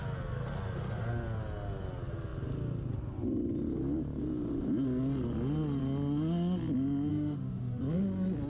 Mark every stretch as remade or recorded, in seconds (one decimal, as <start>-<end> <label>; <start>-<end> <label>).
0.0-7.1 recorded; 7.1-7.8 remade; 7.8-8.5 recorded